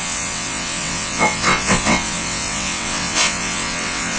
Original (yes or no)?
no